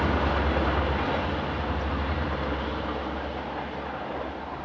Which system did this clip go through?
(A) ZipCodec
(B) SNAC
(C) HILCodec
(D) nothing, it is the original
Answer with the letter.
D